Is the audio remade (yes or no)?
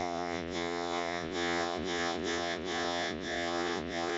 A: yes